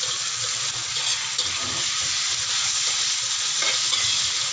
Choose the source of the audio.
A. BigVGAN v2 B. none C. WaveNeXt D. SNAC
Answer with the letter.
B